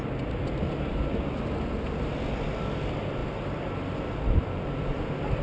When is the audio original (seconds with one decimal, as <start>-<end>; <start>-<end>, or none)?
0.0-5.4

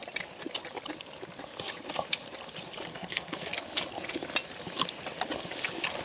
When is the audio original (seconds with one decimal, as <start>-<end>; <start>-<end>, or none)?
0.0-2.9; 3.5-6.0

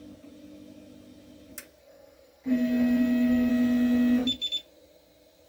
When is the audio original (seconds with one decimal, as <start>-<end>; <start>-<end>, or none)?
0.0-1.8; 3.5-5.5

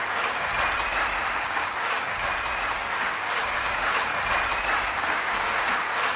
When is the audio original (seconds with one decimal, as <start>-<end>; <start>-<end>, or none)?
0.5-1.3; 2.3-3.0; 4.1-5.1

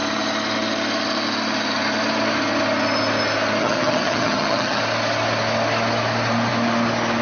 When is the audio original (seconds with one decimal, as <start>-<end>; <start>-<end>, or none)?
0.0-3.6; 4.8-7.2